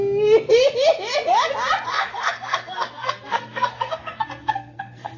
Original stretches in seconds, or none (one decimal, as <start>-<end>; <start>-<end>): 0.0-1.9